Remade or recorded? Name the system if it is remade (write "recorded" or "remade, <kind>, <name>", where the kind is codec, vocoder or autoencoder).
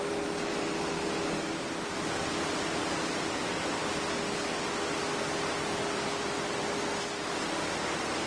recorded